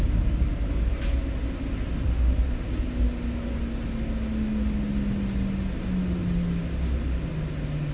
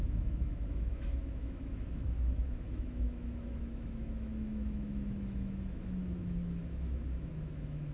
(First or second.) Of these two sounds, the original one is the first